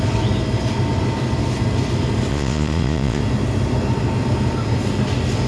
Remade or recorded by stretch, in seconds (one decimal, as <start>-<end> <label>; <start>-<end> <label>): 0.0-2.3 recorded; 2.3-3.2 remade; 3.2-5.5 recorded